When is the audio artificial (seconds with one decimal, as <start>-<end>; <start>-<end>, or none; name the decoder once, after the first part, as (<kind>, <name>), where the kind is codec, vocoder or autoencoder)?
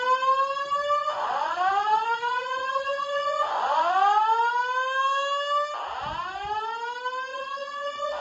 1.0-3.9 (vocoder, Vocos); 7.3-8.2